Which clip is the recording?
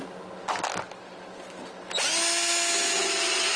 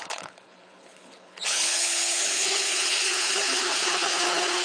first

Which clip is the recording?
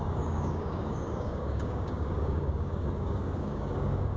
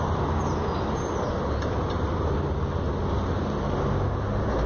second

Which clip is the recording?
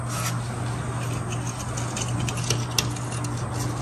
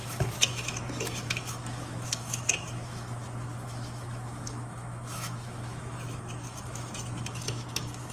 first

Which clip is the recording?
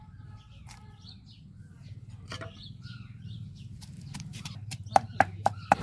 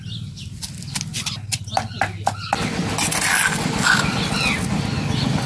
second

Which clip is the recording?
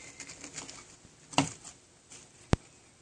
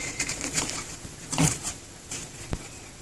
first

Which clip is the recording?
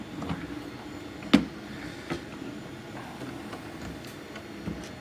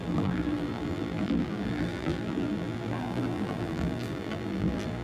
first